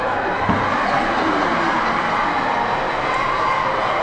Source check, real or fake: real